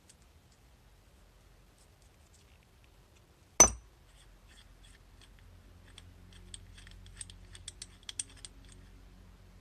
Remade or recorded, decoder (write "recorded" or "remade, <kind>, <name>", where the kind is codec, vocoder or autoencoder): recorded